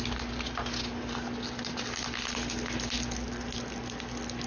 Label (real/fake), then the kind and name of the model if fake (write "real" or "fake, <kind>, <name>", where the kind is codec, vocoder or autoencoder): real